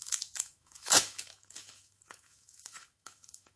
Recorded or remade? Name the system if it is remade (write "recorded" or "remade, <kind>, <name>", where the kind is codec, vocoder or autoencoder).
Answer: remade, autoencoder, DAC-VAE